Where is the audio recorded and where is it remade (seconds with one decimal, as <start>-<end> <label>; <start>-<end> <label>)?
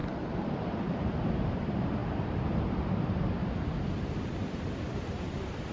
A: 0.0-1.3 recorded; 1.3-5.7 remade